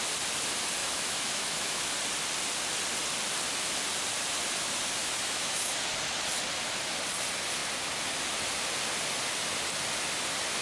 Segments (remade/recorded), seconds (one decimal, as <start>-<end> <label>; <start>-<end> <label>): 0.0-0.8 recorded; 0.8-1.9 remade; 1.9-5.0 recorded; 5.0-5.7 remade; 5.7-10.6 recorded